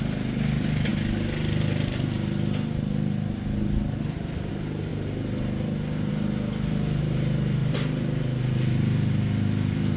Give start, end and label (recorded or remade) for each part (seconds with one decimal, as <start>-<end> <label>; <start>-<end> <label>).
0.0-10.0 recorded